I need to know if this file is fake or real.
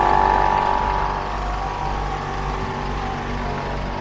real